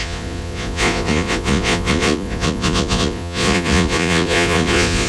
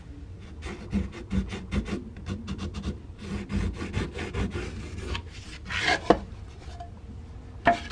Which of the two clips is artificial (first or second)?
first